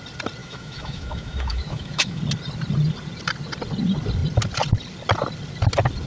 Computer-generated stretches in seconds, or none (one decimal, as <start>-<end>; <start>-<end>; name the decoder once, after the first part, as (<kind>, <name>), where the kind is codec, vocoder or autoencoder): 0.4-2.2 (autoencoder, DAC-VAE)